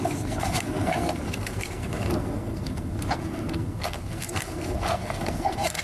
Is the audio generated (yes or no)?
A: yes